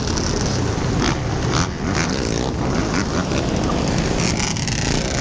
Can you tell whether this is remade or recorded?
recorded